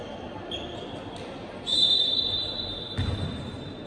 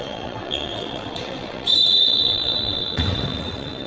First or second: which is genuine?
first